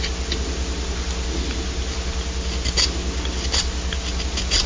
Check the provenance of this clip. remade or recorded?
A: recorded